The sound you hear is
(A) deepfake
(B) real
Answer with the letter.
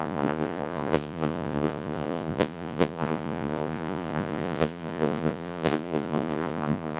A